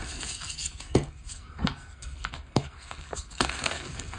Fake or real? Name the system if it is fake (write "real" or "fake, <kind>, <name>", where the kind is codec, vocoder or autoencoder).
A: fake, codec, SNAC